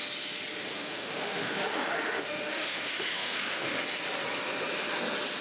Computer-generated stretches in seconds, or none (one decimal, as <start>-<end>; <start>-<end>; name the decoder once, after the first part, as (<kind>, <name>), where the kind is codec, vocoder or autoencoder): 0.6-3.8 (autoencoder, DAC-VAE)